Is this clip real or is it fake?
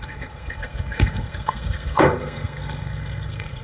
fake